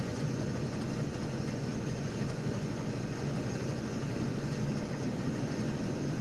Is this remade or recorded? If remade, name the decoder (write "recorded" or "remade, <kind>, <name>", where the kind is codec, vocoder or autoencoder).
remade, vocoder, Vocos